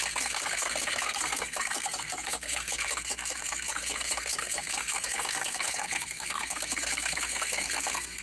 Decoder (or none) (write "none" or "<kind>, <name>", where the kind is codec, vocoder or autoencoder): codec, SNAC